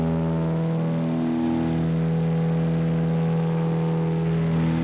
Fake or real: real